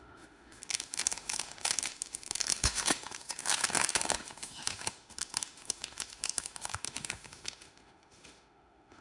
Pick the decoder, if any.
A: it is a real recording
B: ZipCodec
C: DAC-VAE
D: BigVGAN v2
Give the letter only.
C